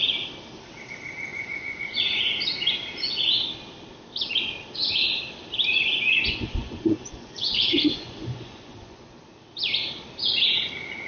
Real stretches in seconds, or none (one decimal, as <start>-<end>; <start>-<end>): 0.0-1.3; 2.4-5.7; 9.2-11.1